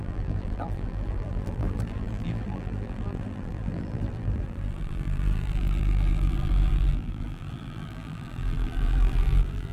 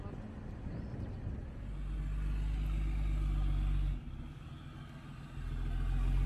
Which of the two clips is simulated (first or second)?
first